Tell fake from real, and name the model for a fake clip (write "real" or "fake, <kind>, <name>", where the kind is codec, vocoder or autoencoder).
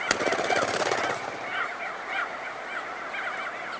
real